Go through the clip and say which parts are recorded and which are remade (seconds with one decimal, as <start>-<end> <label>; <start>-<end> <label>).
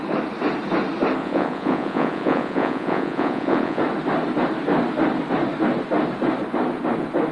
0.0-1.2 recorded; 1.2-3.8 remade; 3.8-7.3 recorded